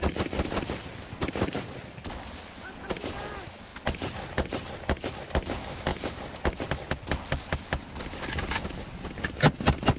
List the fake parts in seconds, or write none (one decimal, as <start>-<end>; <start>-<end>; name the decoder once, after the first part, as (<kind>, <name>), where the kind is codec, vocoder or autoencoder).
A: none